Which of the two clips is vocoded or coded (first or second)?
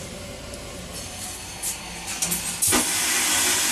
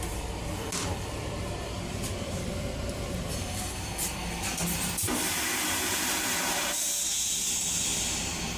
second